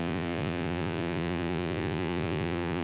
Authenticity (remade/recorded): remade